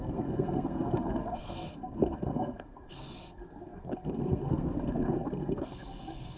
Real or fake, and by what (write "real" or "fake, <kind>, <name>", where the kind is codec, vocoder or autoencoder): fake, codec, SNAC